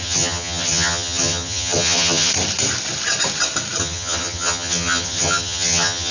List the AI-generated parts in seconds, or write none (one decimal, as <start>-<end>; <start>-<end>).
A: 0.0-2.3; 3.8-6.1